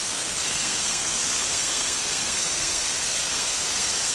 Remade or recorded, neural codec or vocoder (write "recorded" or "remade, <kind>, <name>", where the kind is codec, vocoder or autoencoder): remade, codec, SNAC